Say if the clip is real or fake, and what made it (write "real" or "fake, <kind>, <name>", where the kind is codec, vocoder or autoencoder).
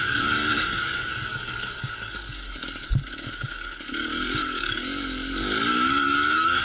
fake, codec, DAC